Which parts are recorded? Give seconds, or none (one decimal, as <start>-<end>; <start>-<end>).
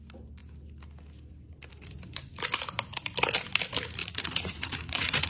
0.0-4.0